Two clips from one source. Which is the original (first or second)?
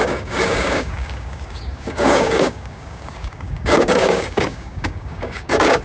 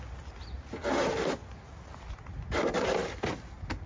second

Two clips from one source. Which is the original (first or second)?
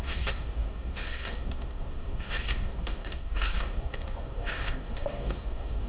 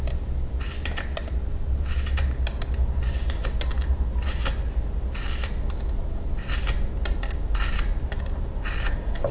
second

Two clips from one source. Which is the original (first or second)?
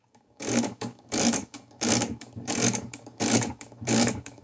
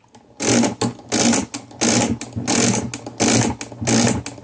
second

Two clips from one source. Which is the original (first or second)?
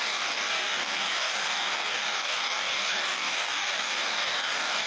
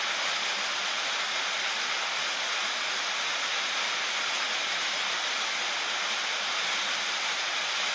second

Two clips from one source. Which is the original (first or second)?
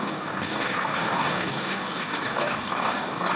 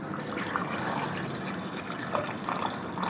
second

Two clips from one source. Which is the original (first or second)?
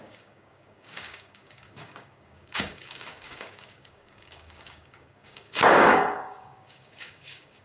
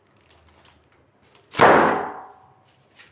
second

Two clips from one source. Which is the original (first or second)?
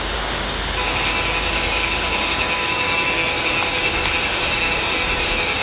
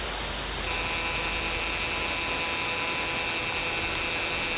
second